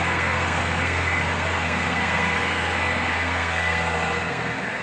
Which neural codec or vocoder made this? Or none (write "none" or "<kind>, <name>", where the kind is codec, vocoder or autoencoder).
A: codec, SNAC